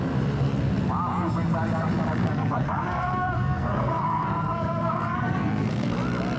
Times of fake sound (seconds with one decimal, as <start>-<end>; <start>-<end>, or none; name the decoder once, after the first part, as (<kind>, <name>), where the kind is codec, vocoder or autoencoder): 2.2-5.9 (codec, SNAC)